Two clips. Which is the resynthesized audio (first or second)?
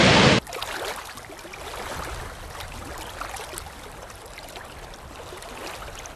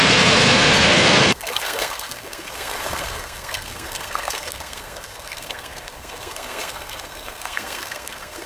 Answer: second